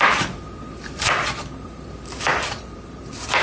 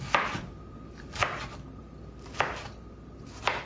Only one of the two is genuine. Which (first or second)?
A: second